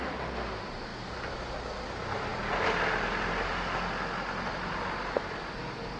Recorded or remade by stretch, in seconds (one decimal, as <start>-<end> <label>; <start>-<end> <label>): 0.0-6.0 recorded